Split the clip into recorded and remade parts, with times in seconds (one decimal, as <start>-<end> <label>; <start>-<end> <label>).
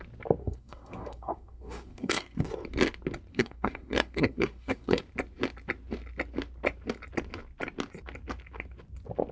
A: 0.0-0.4 recorded; 0.4-2.4 remade; 2.4-3.3 recorded; 3.3-5.0 remade; 5.0-9.3 recorded